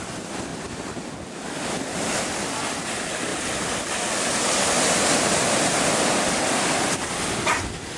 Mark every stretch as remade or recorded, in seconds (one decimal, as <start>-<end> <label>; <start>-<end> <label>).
0.0-8.0 recorded